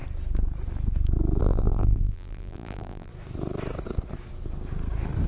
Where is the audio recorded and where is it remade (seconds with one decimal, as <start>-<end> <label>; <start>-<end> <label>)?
0.0-1.4 recorded; 1.4-3.1 remade; 3.1-5.3 recorded

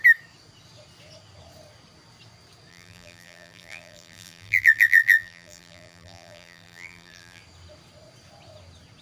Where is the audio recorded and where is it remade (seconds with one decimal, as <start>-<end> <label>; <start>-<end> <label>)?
0.0-2.7 recorded; 2.7-7.4 remade; 7.4-9.0 recorded